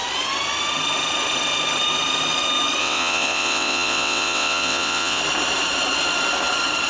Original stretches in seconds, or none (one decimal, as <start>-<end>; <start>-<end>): 0.0-2.8; 5.2-6.9